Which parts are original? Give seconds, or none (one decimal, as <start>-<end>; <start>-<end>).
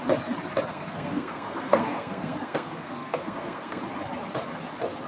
0.0-0.7; 3.8-5.1